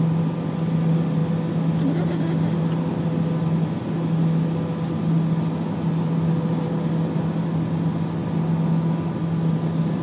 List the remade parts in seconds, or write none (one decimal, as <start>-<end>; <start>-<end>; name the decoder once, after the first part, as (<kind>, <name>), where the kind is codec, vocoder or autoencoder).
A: none